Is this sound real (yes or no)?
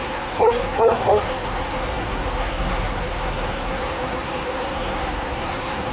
no